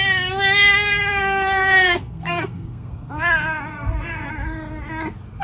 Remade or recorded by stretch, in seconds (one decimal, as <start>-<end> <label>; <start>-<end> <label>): 0.0-1.2 recorded; 1.2-3.1 remade; 3.1-3.7 recorded; 3.7-4.3 remade; 4.3-5.4 recorded